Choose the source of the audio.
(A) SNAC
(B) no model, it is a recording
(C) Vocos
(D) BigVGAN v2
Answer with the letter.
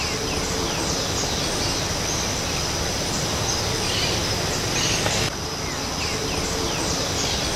B